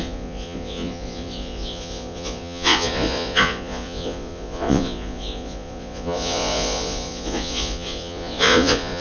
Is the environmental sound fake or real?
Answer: fake